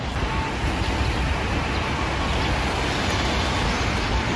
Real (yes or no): yes